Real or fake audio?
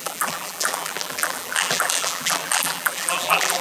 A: fake